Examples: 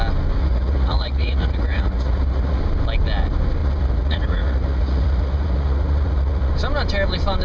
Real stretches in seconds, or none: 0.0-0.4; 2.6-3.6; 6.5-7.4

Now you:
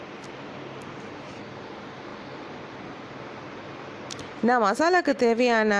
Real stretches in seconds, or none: 0.0-5.8

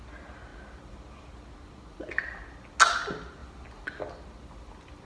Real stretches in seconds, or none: 0.0-5.0

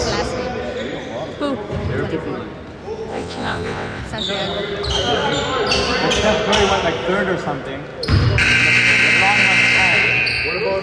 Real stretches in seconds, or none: 0.0-3.1; 4.0-10.8

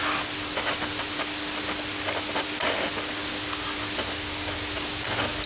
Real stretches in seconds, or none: 0.0-5.5

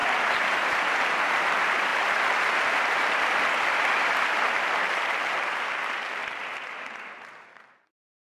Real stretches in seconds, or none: none

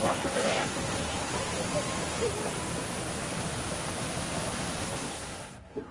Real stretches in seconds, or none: 1.3-4.8

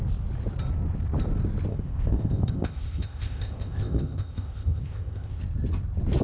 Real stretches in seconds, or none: 0.0-1.7; 5.4-6.2